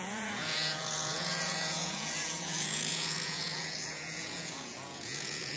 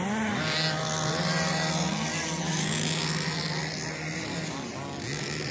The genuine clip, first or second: second